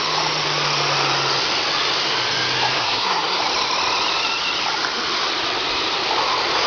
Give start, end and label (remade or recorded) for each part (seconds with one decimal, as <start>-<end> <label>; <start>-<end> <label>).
0.0-2.7 recorded; 2.7-3.4 remade; 3.4-6.7 recorded